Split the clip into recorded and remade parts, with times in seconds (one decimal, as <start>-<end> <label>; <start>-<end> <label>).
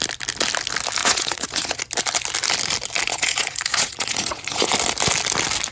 0.0-1.0 recorded; 1.0-1.8 remade; 1.8-3.1 recorded; 3.1-4.7 remade; 4.7-5.7 recorded